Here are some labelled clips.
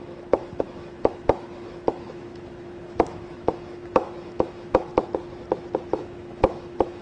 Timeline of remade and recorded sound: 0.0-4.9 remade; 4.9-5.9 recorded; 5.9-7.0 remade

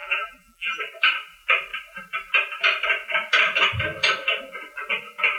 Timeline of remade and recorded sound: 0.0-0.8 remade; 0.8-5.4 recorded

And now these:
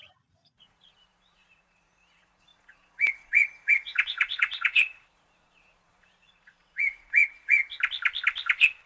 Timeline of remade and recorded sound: 0.0-7.6 remade; 7.6-8.9 recorded

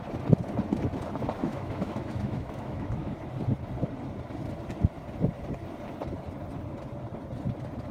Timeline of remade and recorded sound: 0.0-1.4 recorded; 1.4-3.1 remade; 3.1-7.9 recorded